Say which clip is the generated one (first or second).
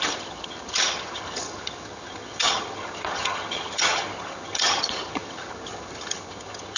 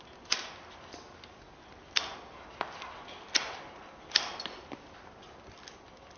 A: first